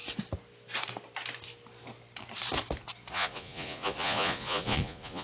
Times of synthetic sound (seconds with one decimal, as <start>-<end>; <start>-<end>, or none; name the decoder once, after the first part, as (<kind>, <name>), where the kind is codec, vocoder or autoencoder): 3.1-5.2 (vocoder, Vocos)